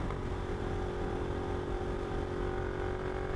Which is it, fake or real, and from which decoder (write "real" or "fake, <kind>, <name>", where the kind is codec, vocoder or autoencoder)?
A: real